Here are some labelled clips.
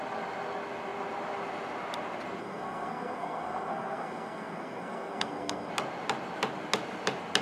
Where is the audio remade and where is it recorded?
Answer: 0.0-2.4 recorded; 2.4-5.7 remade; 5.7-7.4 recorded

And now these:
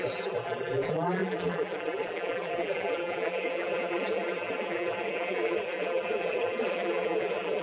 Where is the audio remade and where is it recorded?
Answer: 0.0-7.6 remade

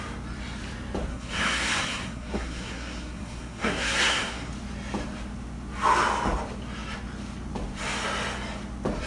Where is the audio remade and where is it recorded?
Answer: 0.0-1.1 recorded; 1.1-4.5 remade; 4.5-9.1 recorded

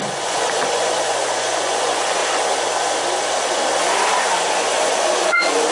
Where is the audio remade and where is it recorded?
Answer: 0.0-2.2 remade; 2.2-4.5 recorded; 4.5-5.7 remade

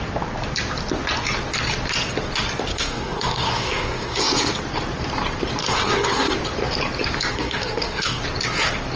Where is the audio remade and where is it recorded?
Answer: 0.0-2.7 recorded; 2.7-4.2 remade; 4.2-5.6 recorded; 5.6-6.3 remade; 6.3-7.3 recorded; 7.3-8.2 remade; 8.2-9.0 recorded

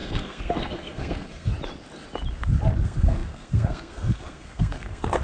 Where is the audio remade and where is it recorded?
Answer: 0.0-1.5 remade; 1.5-2.8 recorded; 2.8-5.2 remade

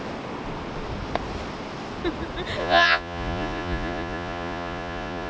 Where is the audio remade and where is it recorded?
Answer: 0.0-2.6 recorded; 2.6-5.3 remade

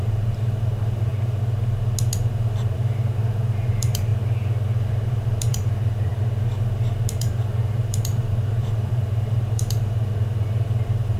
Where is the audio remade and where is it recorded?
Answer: 0.0-1.1 remade; 1.1-2.2 recorded; 2.2-4.1 remade; 4.1-4.9 recorded; 4.9-6.1 remade; 6.1-7.3 recorded; 7.3-11.2 remade